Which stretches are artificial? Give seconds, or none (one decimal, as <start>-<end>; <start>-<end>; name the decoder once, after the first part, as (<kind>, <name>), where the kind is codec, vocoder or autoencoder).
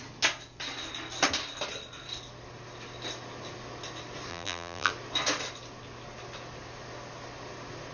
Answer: 4.3-4.9 (vocoder, BigVGAN v2)